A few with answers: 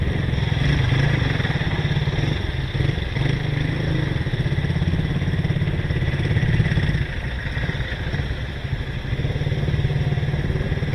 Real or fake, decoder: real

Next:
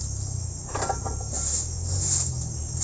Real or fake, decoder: real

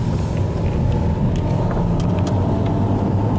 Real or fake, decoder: real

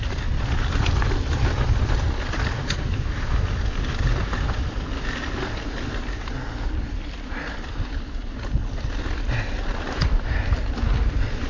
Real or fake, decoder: real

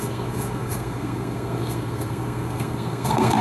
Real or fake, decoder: fake, codec, SNAC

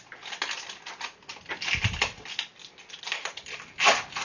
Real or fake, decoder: real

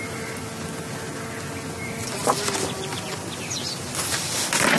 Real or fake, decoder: real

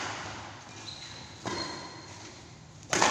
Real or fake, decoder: real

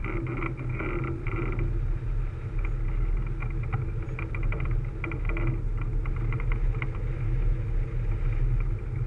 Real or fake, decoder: real